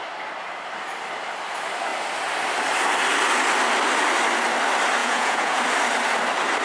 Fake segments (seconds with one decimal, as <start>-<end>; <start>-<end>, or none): 5.0-5.6